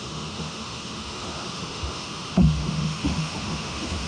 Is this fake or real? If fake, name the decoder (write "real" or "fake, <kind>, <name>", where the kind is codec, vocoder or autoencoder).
fake, autoencoder, DAC-VAE